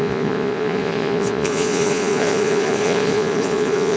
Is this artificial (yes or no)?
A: yes